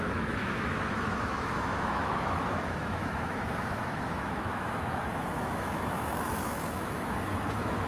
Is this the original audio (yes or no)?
no